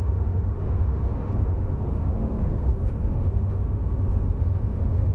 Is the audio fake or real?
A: fake